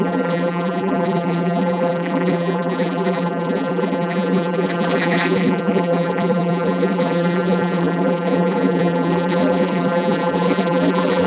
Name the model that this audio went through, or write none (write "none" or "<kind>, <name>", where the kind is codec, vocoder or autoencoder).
vocoder, BigVGAN v2